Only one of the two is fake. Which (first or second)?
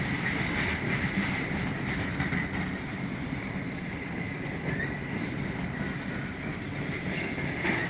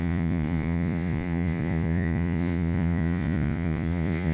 second